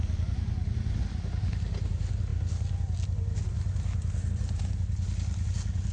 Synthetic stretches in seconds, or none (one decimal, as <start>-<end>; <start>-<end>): none